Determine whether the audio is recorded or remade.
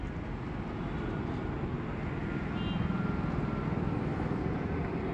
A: recorded